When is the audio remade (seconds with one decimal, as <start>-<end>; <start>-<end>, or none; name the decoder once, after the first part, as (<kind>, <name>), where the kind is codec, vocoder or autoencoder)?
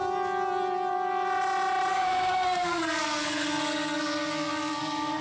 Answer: 1.9-5.2 (codec, SNAC)